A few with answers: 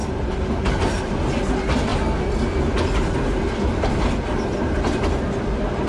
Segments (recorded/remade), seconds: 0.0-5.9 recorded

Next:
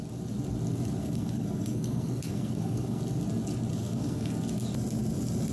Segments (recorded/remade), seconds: 0.0-1.0 recorded; 1.0-3.0 remade; 3.0-3.7 recorded; 3.7-4.3 remade; 4.3-5.5 recorded